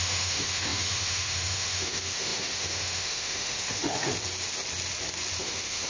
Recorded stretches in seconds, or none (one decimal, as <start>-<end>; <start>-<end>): 4.1-5.4